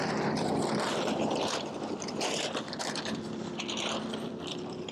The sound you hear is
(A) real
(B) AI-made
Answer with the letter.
B